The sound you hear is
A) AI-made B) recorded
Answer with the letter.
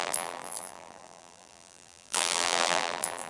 A